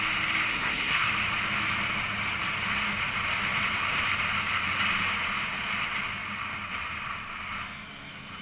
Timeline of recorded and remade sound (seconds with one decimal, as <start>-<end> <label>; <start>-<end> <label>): 0.0-0.5 recorded; 0.5-1.1 remade; 1.1-8.4 recorded